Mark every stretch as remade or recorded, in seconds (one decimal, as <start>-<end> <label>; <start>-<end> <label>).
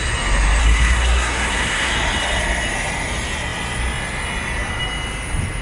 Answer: 0.0-0.6 recorded; 0.6-1.9 remade; 1.9-5.6 recorded